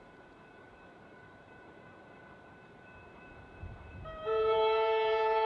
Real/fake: fake